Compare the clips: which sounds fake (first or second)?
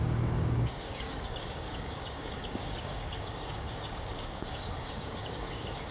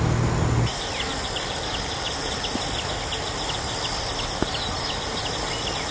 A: first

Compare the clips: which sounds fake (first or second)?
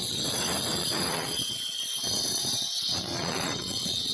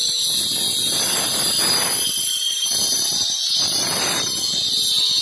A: first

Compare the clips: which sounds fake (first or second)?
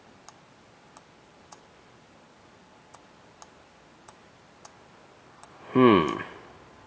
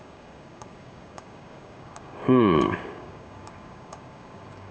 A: second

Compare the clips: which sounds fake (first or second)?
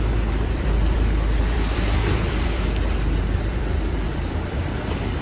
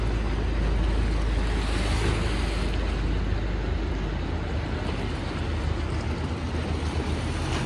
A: first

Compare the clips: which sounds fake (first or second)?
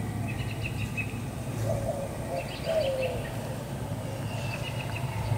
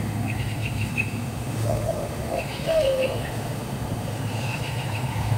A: second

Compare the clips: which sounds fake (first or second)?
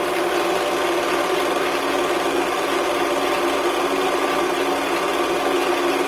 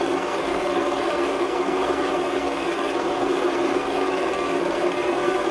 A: second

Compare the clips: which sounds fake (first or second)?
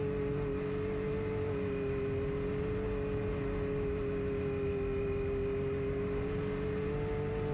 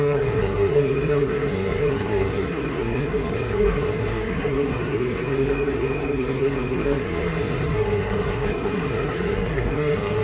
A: second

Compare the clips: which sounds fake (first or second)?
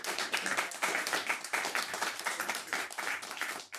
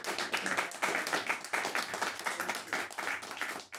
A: first